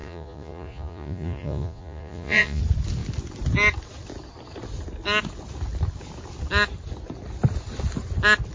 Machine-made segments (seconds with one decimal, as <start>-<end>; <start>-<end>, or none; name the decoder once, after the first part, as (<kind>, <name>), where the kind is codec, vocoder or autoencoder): 0.0-2.6 (vocoder, Vocos)